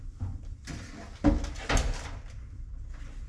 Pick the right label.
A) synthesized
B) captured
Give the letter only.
B